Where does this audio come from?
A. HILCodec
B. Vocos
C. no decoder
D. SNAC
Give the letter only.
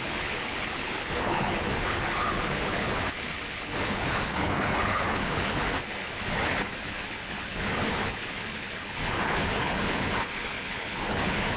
A